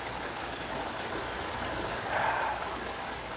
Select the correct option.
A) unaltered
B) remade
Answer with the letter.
B